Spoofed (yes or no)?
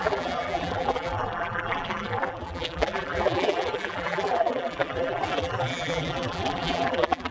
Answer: yes